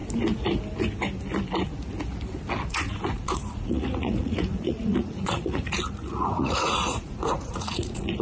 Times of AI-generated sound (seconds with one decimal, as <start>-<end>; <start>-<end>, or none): 2.7-8.2